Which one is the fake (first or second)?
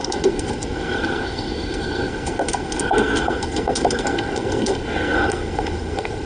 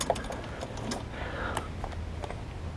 first